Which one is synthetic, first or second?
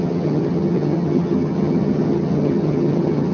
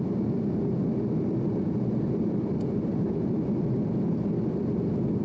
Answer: first